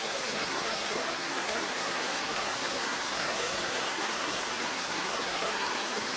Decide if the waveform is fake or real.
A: fake